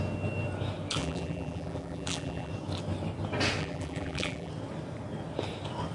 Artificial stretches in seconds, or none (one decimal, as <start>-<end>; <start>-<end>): 1.0-2.5; 3.6-4.5